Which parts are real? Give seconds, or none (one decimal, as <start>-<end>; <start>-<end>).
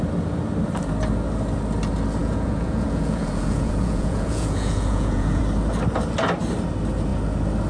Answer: 0.0-2.2; 5.4-7.7